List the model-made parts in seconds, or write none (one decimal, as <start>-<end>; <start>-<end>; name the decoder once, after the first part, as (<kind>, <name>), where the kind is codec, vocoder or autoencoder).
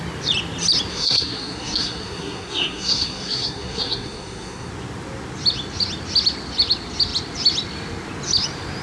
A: 0.9-4.7 (codec, SNAC)